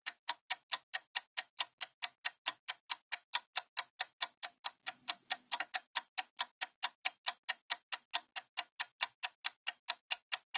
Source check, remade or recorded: recorded